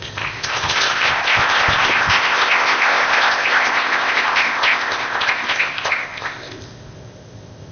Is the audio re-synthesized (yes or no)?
yes